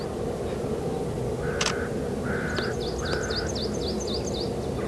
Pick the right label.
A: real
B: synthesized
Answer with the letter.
A